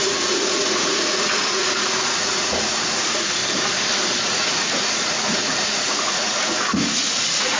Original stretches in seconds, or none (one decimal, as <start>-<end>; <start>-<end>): 3.4-4.2